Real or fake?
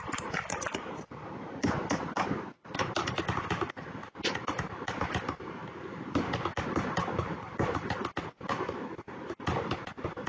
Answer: real